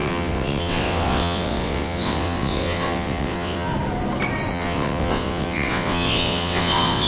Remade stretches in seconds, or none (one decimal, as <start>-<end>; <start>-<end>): 0.0-3.7; 4.5-7.1

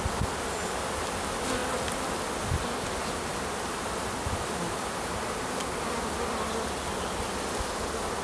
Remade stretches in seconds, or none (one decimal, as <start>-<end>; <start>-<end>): none

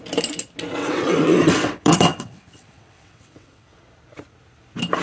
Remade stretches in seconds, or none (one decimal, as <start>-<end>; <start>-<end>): 0.8-3.8